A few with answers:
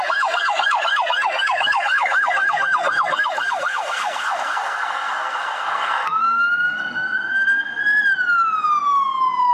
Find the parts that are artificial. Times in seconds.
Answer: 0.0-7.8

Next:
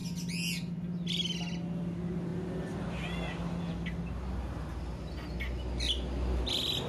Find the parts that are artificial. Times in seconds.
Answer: none

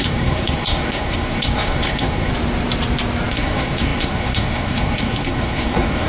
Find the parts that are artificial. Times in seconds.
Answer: 0.0-2.3; 3.3-6.1